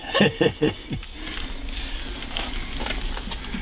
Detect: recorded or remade recorded